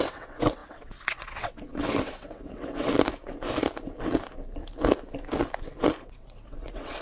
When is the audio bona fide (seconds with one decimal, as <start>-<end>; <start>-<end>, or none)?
2.9-6.0

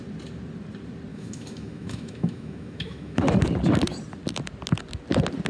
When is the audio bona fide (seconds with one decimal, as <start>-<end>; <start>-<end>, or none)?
0.0-1.1; 3.2-5.5

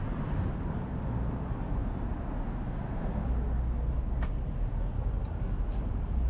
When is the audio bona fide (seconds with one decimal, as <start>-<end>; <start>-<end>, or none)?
0.0-6.3

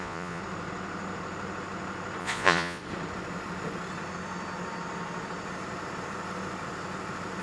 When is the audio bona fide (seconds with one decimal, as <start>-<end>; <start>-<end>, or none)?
0.4-2.2; 2.8-7.4

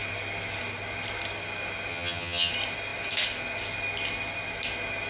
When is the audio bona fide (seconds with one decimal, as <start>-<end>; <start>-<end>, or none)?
0.0-1.9; 2.5-5.1

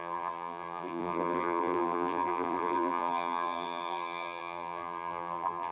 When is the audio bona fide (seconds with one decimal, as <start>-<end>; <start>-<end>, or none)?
none

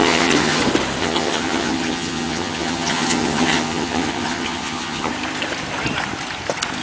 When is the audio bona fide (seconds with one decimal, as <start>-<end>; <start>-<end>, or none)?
0.6-1.0; 5.1-6.8